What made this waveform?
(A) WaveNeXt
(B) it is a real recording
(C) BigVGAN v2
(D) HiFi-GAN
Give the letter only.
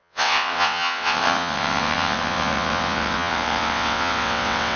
A